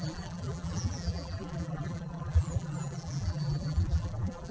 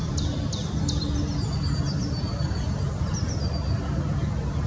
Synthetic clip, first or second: first